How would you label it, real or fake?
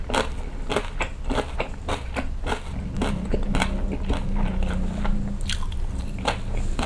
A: real